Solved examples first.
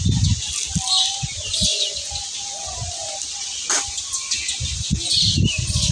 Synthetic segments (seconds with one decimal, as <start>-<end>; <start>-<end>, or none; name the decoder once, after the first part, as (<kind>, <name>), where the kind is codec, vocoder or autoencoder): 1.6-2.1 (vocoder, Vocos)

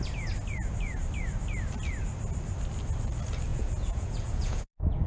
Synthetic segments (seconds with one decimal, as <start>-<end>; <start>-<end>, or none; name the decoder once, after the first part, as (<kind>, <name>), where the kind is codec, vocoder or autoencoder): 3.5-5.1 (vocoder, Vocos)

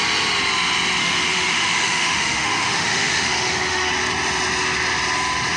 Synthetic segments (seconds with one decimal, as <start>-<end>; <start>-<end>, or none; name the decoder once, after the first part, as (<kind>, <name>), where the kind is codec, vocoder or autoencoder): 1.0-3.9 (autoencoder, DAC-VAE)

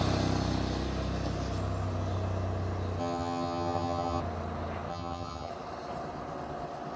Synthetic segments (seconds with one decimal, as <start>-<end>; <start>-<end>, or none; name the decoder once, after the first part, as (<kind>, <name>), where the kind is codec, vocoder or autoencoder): 3.0-4.2 (vocoder, HiFi-GAN); 4.9-5.5